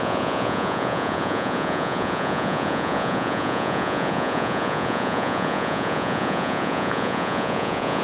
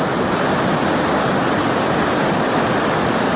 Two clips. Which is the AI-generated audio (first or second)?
first